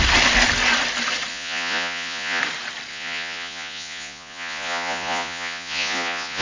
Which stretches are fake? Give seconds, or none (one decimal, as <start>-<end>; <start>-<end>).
1.3-2.4; 2.9-6.4